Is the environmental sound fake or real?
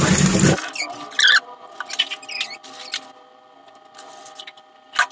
real